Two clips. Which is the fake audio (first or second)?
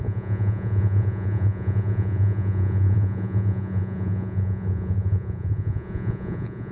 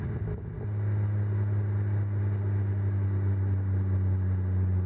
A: first